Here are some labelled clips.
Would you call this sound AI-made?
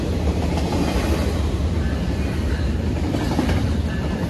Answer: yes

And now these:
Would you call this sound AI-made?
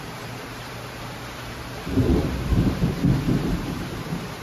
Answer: yes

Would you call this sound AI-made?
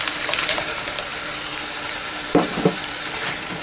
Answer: yes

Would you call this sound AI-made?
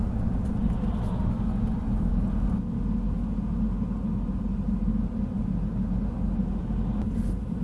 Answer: no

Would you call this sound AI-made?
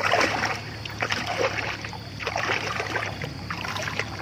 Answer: yes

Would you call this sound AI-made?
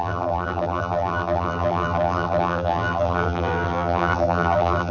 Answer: yes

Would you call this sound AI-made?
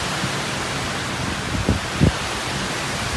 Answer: no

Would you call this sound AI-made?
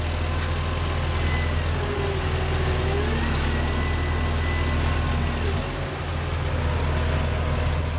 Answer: no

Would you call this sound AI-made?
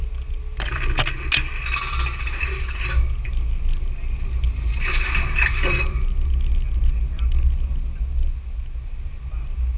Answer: no